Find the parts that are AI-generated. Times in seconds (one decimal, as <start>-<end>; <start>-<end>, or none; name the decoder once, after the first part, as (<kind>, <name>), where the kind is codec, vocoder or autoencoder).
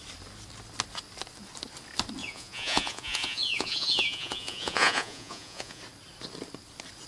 2.2-5.8 (vocoder, Vocos)